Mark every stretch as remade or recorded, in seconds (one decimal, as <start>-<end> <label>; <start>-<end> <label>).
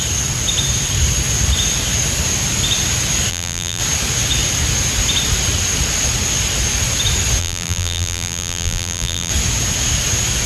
0.0-3.3 recorded; 3.3-3.8 remade; 3.8-7.4 recorded; 7.4-9.3 remade; 9.3-10.5 recorded